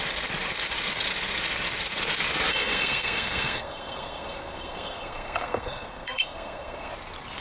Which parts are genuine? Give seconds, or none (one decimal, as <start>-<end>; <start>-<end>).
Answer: 0.0-2.5; 6.9-7.4